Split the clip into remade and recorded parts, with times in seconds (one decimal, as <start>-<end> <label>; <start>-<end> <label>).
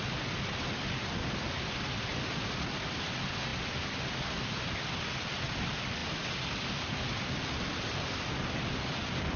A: 0.0-9.4 recorded